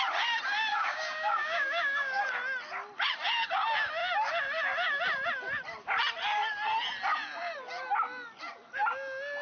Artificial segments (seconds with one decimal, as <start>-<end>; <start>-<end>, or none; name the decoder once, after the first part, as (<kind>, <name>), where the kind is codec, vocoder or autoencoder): 0.7-2.2 (codec, DAC)